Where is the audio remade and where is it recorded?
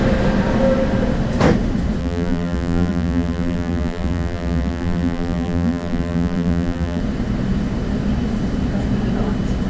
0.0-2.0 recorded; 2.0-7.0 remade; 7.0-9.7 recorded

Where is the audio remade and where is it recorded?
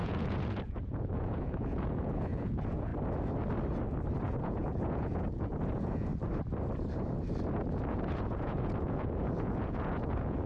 0.0-2.9 remade; 2.9-4.2 recorded; 4.2-6.1 remade; 6.1-7.7 recorded; 7.7-10.5 remade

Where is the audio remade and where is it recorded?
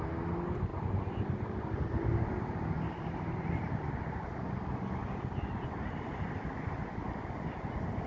0.0-8.1 recorded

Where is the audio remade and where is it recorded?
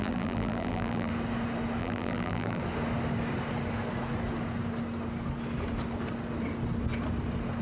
0.0-1.1 remade; 1.1-1.8 recorded; 1.8-2.6 remade; 2.6-7.6 recorded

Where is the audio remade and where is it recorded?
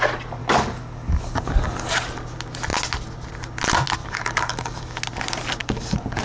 0.0-0.4 recorded; 0.4-1.9 remade; 1.9-4.0 recorded; 4.0-5.0 remade; 5.0-5.6 recorded; 5.6-6.2 remade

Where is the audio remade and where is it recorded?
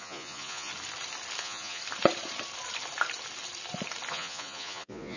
0.0-0.7 remade; 0.7-1.4 recorded; 1.4-1.8 remade; 1.8-4.1 recorded; 4.1-5.2 remade